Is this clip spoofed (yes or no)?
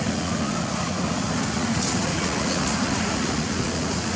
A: yes